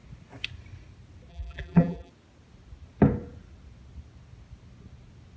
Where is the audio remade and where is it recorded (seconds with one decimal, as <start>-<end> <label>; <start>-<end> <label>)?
0.0-1.3 recorded; 1.3-2.1 remade; 2.1-5.4 recorded

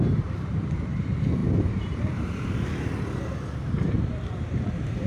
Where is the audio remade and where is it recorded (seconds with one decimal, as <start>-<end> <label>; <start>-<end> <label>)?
0.0-5.1 remade

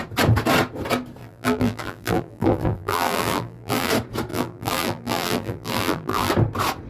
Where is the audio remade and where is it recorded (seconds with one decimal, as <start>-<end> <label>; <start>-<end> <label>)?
0.0-1.2 recorded; 1.2-3.9 remade; 3.9-4.3 recorded; 4.3-6.3 remade; 6.3-6.9 recorded

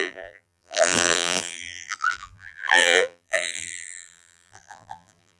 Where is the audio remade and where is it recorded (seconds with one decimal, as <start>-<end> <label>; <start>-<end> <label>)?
0.0-5.4 remade

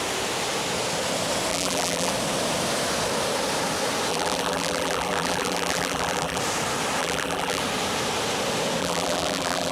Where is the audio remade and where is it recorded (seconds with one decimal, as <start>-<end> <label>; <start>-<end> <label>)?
0.0-1.5 recorded; 1.5-2.1 remade; 2.1-4.1 recorded; 4.1-6.4 remade; 6.4-7.0 recorded; 7.0-7.6 remade; 7.6-8.8 recorded; 8.8-9.7 remade

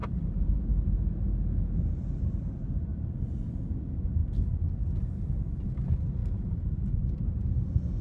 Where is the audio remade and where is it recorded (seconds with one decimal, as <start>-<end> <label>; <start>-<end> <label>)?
0.0-0.7 remade; 0.7-6.2 recorded; 6.2-7.1 remade; 7.1-8.0 recorded

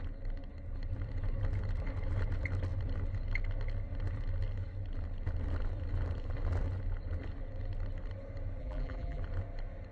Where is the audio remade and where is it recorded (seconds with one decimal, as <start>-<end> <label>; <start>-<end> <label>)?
0.0-8.6 recorded; 8.6-9.2 remade; 9.2-9.9 recorded

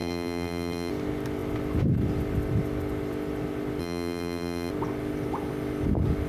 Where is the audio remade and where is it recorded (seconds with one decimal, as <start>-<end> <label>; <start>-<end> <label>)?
0.0-0.9 remade; 0.9-3.8 recorded; 3.8-4.7 remade; 4.7-6.3 recorded